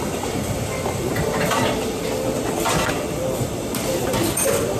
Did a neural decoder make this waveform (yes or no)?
yes